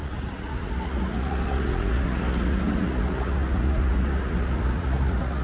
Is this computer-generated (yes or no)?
yes